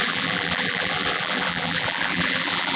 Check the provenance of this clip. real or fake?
fake